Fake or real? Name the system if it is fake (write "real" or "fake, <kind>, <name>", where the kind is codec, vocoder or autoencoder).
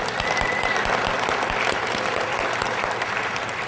fake, vocoder, BigVGAN v2